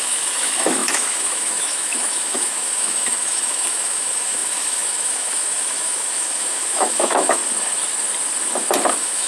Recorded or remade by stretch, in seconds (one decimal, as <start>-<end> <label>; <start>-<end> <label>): 0.0-7.4 remade; 7.4-8.9 recorded; 8.9-9.3 remade